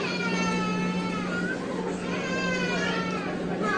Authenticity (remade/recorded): recorded